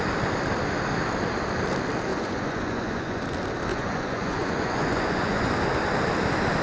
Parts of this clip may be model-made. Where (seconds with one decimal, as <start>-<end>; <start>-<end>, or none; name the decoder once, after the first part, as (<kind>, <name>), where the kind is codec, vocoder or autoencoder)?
2.1-3.2 (vocoder, Vocos); 3.7-5.5

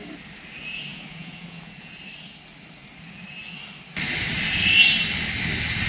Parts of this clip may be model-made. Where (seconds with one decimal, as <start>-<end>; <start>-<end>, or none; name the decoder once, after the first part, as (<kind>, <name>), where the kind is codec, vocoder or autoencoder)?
0.9-1.9 (vocoder, Vocos)

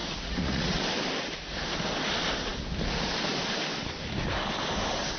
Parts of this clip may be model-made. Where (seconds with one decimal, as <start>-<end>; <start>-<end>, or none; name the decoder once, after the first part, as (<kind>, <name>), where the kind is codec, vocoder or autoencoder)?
0.0-0.8 (vocoder, Vocos)

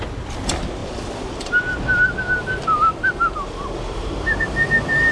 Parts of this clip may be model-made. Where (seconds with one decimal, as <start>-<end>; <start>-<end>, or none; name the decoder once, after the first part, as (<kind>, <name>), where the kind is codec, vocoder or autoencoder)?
0.8-1.5 (vocoder, BigVGAN v2); 1.9-5.1

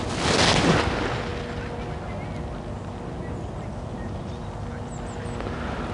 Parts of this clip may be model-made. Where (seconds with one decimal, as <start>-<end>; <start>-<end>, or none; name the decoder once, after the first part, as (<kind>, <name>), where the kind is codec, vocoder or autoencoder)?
none

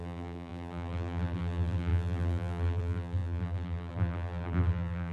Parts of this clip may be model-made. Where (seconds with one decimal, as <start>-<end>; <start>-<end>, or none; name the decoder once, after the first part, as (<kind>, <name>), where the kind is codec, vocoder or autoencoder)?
0.0-5.1 (vocoder, BigVGAN v2)

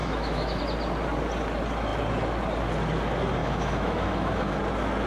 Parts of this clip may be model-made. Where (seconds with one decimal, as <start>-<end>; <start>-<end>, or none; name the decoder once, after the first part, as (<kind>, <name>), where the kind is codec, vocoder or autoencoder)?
0.0-0.6 (autoencoder, DAC-VAE); 3.4-4.6